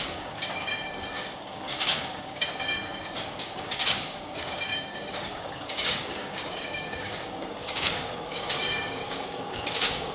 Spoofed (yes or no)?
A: yes